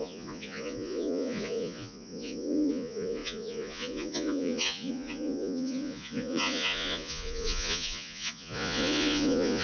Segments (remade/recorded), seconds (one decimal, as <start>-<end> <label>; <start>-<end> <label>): 0.0-9.6 remade